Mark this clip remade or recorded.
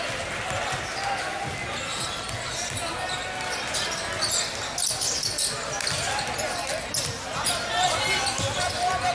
recorded